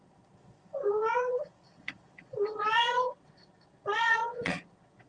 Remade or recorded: remade